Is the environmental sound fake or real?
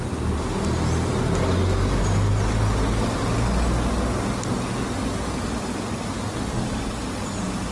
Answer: real